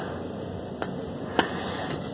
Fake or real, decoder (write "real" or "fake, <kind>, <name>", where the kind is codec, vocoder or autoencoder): real